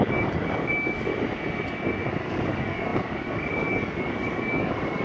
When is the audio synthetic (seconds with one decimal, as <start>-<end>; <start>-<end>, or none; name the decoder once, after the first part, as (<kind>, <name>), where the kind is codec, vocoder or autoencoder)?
0.0-1.1 (codec, DAC); 2.3-5.0